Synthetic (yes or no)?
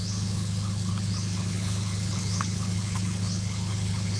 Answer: yes